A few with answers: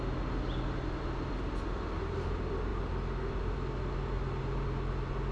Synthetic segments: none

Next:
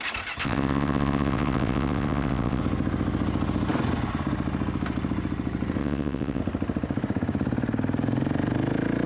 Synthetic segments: 0.4-2.6 (vocoder, WaveNeXt); 5.8-6.4

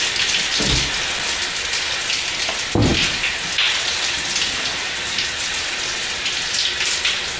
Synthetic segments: none

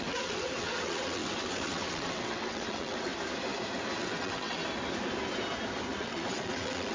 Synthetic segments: 0.0-3.1 (vocoder, WaveNeXt); 4.0-4.6; 6.0-6.9